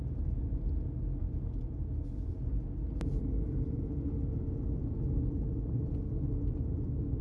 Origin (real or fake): real